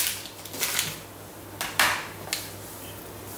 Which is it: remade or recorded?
recorded